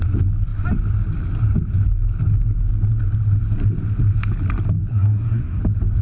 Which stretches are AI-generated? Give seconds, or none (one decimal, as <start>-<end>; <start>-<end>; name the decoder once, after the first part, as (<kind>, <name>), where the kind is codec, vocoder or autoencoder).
4.9-5.6 (codec, SNAC)